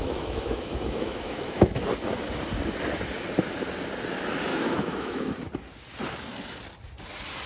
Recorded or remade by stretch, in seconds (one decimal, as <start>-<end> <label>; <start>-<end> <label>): 0.0-1.8 remade; 1.8-4.5 recorded; 4.5-5.3 remade; 5.3-7.5 recorded